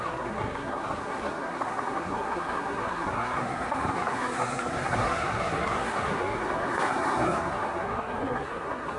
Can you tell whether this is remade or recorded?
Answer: remade